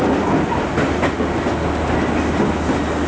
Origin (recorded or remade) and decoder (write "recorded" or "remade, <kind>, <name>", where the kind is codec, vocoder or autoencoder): recorded